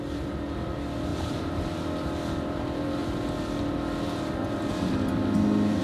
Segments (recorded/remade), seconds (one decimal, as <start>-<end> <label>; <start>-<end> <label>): 0.0-1.1 recorded; 1.1-1.6 remade; 1.6-5.8 recorded